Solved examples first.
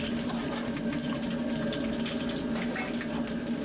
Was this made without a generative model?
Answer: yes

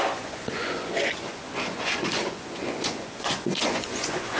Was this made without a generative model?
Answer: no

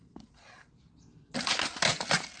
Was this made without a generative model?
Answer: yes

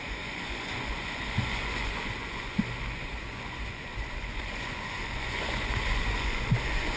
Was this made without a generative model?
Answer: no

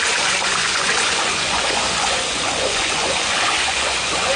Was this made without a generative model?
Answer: no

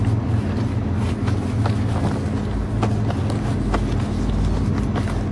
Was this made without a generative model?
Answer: yes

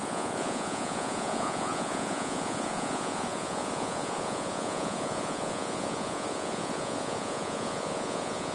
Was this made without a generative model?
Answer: no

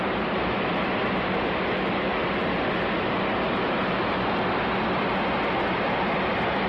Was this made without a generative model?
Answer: yes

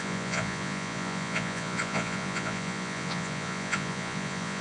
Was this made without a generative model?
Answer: no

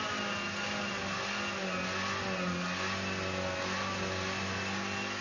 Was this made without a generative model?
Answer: yes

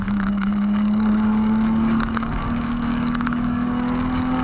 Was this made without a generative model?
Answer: no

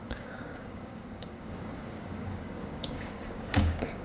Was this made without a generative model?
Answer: no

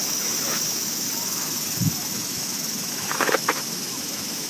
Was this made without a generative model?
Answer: no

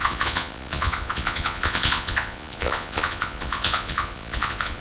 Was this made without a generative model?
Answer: no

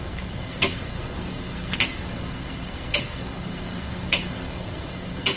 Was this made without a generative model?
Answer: no